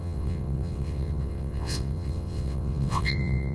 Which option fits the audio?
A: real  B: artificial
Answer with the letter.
B